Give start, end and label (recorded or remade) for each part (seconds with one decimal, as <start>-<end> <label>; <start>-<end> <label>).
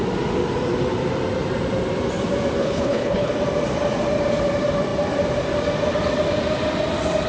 0.0-2.6 recorded; 2.6-3.3 remade; 3.3-7.3 recorded